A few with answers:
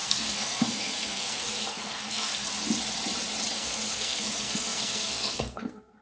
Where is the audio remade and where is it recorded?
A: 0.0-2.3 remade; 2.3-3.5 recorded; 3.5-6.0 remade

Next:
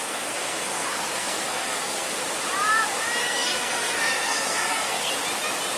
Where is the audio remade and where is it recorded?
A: 0.0-2.1 remade; 2.1-3.2 recorded; 3.2-5.1 remade; 5.1-5.8 recorded

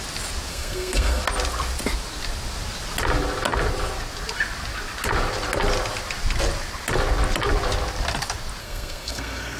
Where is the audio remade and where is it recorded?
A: 0.0-0.5 recorded; 0.5-1.2 remade; 1.2-8.6 recorded; 8.6-9.6 remade

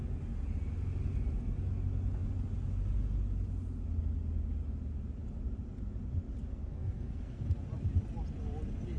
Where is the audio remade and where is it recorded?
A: 0.0-6.5 recorded; 6.5-7.4 remade; 7.4-9.0 recorded

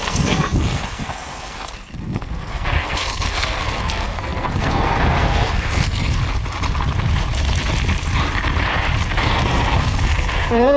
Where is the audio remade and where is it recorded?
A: 0.0-6.2 remade; 6.2-9.2 recorded; 9.2-10.8 remade

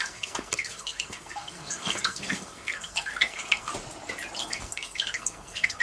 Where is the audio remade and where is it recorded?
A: 0.0-3.7 remade; 3.7-4.4 recorded; 4.4-5.8 remade